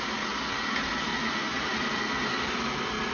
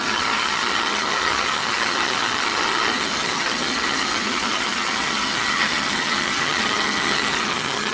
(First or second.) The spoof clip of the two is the second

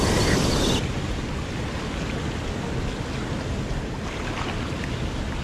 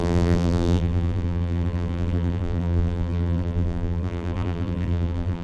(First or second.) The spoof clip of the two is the second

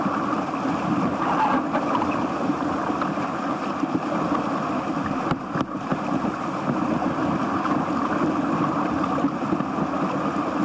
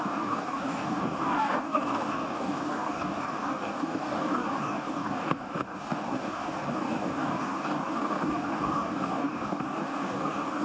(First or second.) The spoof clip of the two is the second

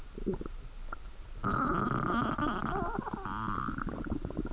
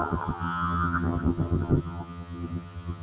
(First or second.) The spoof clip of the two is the second